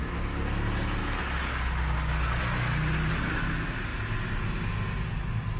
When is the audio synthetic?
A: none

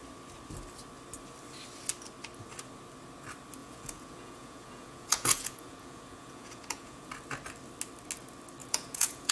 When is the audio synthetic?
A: 3.6-7.1 (vocoder, Vocos); 8.6-9.3

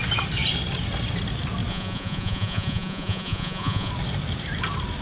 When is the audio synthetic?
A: 1.7-3.9 (vocoder, Vocos)

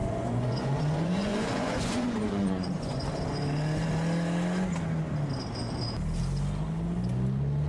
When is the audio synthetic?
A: 0.0-3.0 (vocoder, Vocos)

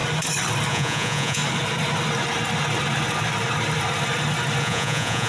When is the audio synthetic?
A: 0.7-1.4 (vocoder, Vocos); 4.6-5.3

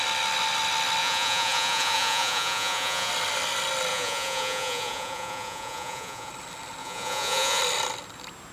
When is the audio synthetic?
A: 1.0-3.1 (vocoder, Vocos); 3.9-6.3; 6.8-7.6

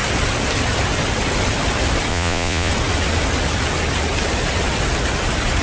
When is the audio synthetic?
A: 2.1-2.7 (vocoder, Vocos)